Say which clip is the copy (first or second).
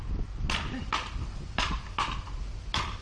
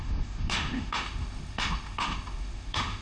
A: second